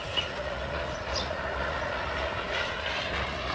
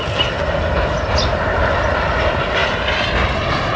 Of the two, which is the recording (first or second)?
second